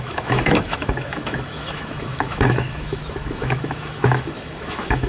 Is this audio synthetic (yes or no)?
yes